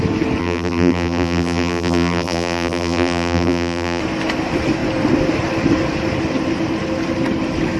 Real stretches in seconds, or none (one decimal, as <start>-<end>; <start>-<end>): 0.0-0.4; 4.0-7.8